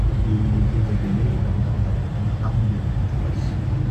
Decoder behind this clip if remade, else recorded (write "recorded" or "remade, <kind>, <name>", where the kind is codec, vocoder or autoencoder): recorded